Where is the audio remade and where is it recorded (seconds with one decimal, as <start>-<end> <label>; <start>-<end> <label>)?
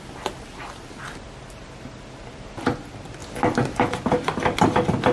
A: 0.0-5.1 recorded